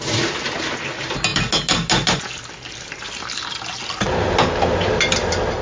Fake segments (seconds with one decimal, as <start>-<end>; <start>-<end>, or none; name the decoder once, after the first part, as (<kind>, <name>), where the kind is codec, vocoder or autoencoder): none